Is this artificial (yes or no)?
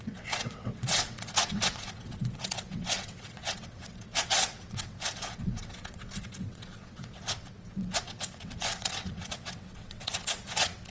yes